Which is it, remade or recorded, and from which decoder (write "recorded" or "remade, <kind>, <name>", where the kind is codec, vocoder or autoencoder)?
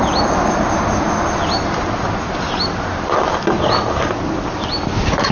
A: recorded